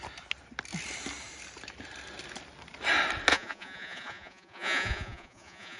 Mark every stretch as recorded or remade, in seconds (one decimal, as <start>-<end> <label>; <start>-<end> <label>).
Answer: 0.0-3.3 recorded; 3.3-5.8 remade